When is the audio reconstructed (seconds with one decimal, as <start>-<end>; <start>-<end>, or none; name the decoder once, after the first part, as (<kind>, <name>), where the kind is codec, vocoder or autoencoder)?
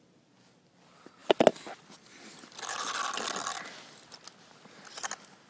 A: none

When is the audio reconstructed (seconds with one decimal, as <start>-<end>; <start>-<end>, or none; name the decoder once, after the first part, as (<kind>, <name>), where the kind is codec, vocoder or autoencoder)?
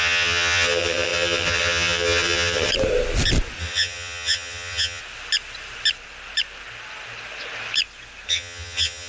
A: 0.0-2.7 (vocoder, HiFi-GAN); 3.6-5.0; 8.3-9.1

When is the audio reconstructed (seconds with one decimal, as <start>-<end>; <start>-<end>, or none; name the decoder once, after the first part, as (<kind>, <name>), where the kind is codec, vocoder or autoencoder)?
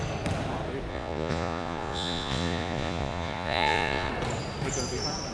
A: 0.9-4.1 (vocoder, Vocos)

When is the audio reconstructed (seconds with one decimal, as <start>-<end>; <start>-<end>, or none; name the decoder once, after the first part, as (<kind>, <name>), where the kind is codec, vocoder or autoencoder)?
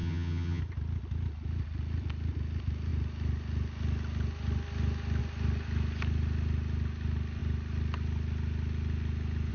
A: 0.0-0.6 (vocoder, HiFi-GAN)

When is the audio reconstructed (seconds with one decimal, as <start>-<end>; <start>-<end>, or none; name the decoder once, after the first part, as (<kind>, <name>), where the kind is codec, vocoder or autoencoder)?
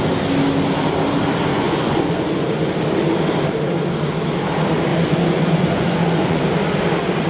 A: 1.5-2.6 (vocoder, Vocos); 4.9-6.4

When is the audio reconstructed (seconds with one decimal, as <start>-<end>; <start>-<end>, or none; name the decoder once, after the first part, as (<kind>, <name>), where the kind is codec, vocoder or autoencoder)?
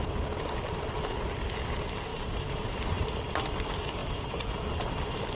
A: 2.1-2.9 (vocoder, BigVGAN v2); 4.0-4.5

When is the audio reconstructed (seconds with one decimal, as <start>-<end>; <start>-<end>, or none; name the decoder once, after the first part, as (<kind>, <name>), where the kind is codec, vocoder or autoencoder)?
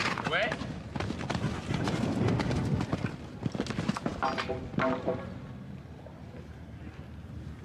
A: none